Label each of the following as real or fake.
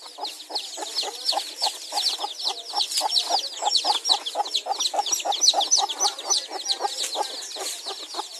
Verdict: real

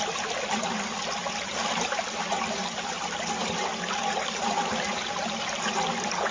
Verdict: real